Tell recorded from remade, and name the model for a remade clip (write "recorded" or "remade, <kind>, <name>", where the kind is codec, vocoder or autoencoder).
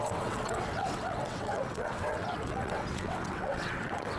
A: remade, vocoder, WaveNeXt